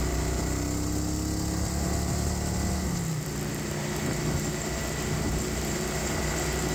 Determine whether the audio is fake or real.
real